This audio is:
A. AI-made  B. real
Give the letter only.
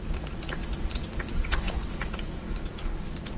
A